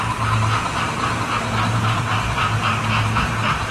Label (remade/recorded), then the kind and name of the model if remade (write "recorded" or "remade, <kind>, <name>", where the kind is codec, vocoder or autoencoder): recorded